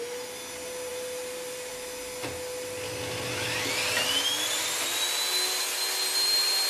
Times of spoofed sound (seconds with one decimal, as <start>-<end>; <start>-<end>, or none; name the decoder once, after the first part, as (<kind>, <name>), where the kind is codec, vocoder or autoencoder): 0.9-1.7 (vocoder, BigVGAN v2)